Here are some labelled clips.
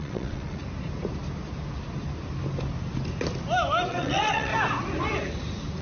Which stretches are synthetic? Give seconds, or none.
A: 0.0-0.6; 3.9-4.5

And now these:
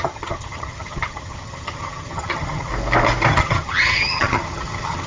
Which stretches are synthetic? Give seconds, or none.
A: 0.0-2.7; 3.3-5.1

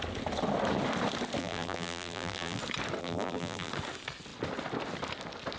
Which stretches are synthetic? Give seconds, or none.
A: 1.4-2.6; 3.0-3.7

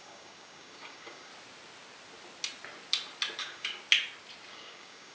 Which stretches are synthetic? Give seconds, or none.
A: 0.0-1.3; 3.4-3.8; 4.5-5.1

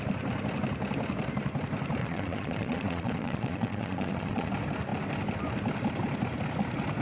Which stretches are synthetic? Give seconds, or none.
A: 2.0-4.5

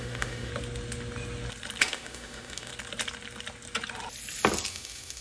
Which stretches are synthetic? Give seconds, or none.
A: 0.0-0.5; 1.8-2.7; 4.7-5.2

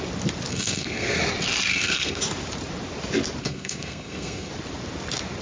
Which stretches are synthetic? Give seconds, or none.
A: 0.5-1.2; 1.7-2.2; 3.4-4.5

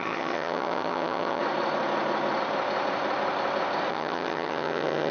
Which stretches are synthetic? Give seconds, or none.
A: 0.0-1.4; 3.9-5.1